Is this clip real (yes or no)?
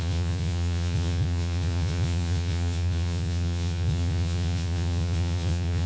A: no